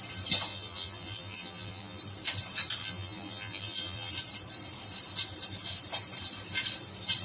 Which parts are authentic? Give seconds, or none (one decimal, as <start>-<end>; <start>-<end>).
0.0-0.5; 2.0-2.8; 4.1-7.2